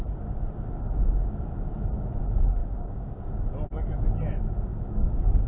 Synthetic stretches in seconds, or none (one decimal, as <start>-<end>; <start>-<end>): 2.6-3.2; 4.7-5.5